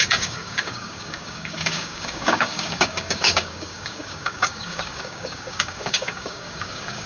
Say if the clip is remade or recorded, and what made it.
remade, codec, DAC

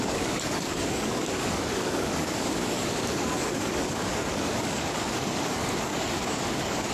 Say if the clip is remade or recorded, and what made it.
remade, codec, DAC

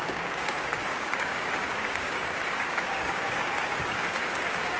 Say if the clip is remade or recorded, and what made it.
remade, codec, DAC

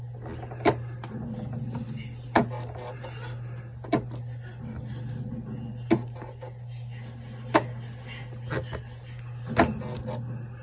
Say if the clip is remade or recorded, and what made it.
recorded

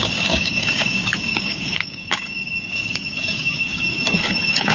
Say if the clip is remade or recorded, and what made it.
remade, codec, DAC